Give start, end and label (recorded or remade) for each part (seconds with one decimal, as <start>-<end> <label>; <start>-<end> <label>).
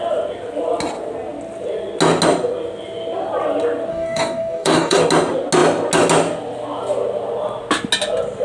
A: 0.0-3.9 recorded; 3.9-5.0 remade; 5.0-8.4 recorded